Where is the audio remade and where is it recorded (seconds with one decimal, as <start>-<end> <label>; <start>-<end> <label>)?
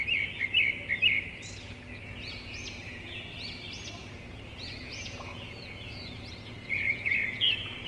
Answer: 0.0-2.2 recorded; 2.2-3.3 remade; 3.3-4.0 recorded; 4.0-7.9 remade